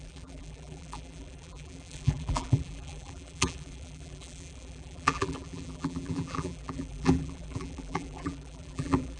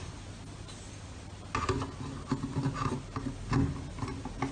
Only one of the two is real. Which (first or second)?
second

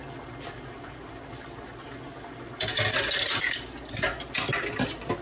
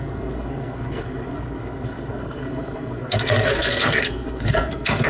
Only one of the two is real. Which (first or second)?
first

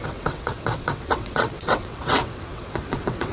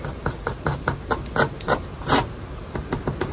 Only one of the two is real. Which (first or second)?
second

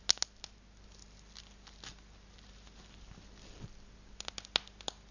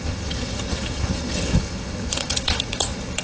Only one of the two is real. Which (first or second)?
first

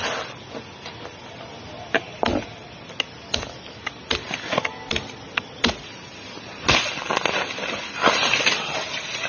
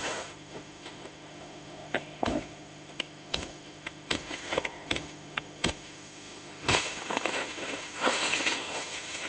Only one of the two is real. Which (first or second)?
first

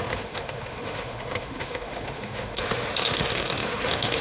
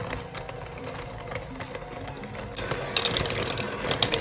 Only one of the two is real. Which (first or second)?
second